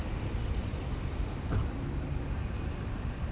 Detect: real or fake real